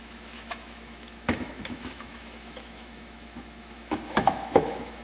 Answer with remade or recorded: remade